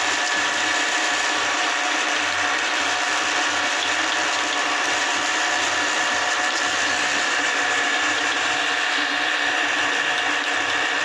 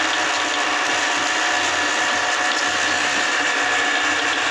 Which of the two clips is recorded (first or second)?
second